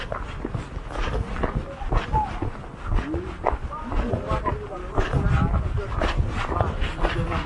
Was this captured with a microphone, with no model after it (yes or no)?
yes